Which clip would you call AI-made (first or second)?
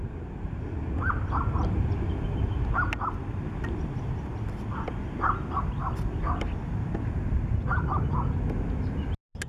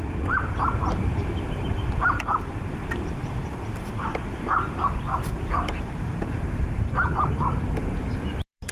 second